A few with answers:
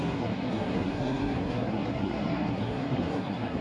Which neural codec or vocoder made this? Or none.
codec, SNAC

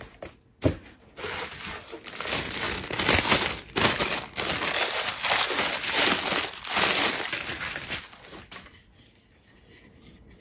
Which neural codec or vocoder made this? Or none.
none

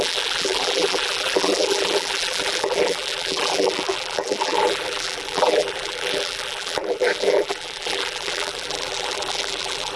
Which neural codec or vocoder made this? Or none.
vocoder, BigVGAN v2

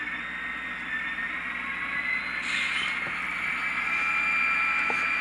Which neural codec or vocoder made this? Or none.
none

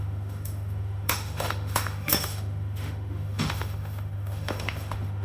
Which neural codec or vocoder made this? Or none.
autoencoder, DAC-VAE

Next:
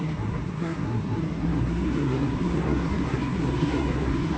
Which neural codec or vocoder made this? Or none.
codec, SNAC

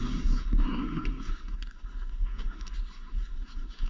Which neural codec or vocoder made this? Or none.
codec, SNAC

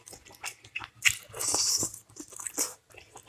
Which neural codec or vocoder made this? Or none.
none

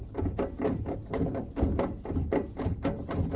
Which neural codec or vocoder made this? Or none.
none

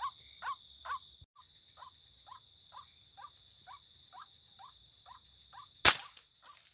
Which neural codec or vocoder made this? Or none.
none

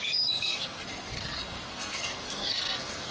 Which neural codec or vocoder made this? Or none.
codec, SNAC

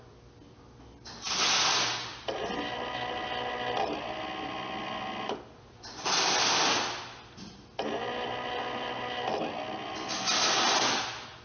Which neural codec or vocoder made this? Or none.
none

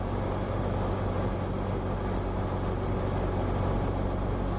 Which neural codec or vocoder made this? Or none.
none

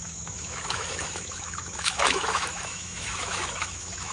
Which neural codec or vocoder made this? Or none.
autoencoder, DAC-VAE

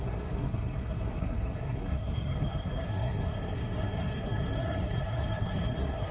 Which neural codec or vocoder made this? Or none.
codec, SNAC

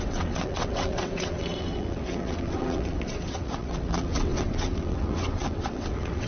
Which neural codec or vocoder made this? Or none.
vocoder, WaveNeXt